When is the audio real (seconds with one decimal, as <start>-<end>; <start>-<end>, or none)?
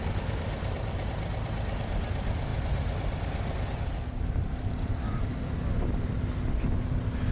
0.0-7.3